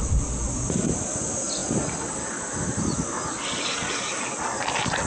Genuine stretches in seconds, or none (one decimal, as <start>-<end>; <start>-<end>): 0.0-5.1